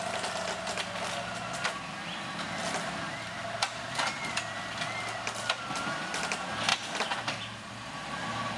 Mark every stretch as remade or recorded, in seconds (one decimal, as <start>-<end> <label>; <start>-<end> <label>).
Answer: 0.0-8.6 recorded